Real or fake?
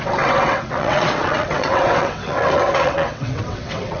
fake